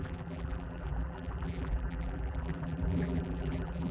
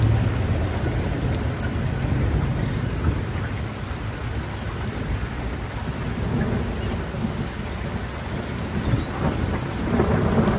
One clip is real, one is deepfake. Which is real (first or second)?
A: second